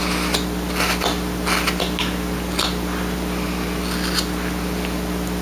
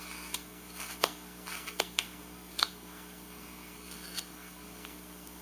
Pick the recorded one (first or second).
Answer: first